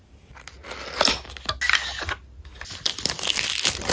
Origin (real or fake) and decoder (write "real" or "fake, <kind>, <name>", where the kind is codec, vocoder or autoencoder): real